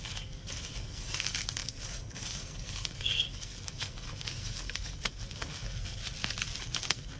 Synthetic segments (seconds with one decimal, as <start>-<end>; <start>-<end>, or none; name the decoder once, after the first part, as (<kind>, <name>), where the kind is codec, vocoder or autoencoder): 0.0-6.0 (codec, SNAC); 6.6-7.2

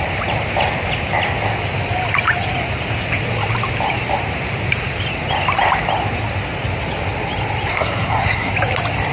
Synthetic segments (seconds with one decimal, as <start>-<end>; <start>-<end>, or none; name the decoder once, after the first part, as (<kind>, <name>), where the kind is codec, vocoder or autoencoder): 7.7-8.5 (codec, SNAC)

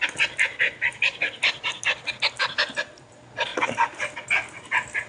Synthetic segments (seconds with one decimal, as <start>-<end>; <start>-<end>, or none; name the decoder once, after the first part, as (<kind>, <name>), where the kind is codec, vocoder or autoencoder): none

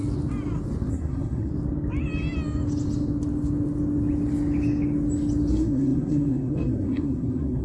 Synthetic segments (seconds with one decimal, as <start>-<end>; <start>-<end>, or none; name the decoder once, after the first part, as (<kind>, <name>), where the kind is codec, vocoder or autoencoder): 0.9-1.5 (codec, SNAC); 5.5-7.6

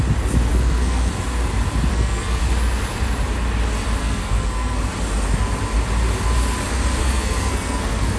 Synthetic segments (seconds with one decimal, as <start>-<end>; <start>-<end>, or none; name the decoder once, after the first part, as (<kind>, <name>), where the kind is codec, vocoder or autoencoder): 0.5-1.1 (codec, SNAC); 1.9-2.4; 4.0-4.8; 7.0-8.2

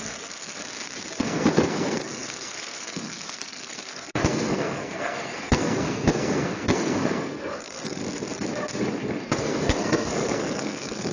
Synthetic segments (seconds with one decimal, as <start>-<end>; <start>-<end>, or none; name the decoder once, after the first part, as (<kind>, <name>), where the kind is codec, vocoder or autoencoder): 0.0-0.6 (codec, SNAC); 1.2-8.0; 9.4-11.1

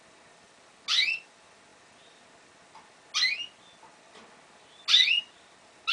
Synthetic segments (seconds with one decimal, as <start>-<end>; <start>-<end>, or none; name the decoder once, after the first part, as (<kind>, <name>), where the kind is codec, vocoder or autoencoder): none

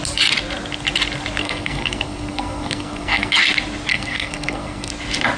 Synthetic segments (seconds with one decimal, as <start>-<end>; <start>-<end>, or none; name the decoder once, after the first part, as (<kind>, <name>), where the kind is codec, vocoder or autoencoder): 1.4-3.4 (codec, SNAC); 3.9-4.9